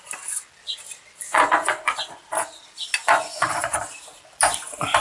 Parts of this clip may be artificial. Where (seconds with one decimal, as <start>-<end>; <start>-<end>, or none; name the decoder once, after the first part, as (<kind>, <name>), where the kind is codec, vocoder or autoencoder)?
1.3-2.2 (vocoder, Vocos); 3.0-3.8